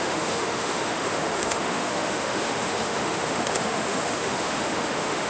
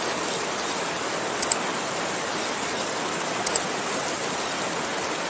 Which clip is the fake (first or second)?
first